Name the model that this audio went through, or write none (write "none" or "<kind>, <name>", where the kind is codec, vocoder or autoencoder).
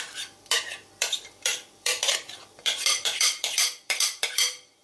vocoder, BigVGAN v2